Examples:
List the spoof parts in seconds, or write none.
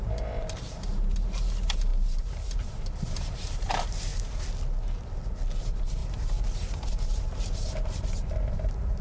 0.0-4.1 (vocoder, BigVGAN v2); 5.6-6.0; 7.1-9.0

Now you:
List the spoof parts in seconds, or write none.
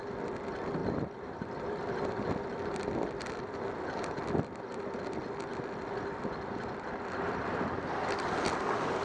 0.8-5.1 (vocoder, BigVGAN v2); 5.5-8.1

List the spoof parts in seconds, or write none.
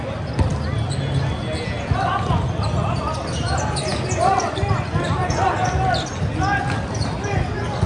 none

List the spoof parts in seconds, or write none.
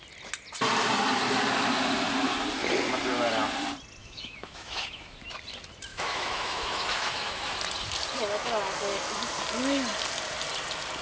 4.0-5.3 (autoencoder, DAC-VAE); 5.9-7.6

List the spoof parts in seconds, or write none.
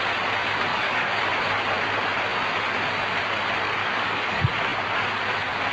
0.7-1.2 (codec, DAC); 3.8-4.4